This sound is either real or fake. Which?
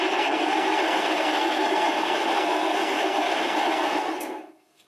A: fake